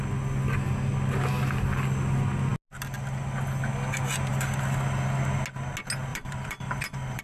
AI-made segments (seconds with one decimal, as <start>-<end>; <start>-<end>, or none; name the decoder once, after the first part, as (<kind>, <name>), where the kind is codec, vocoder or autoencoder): 6.1-7.2 (vocoder, BigVGAN v2)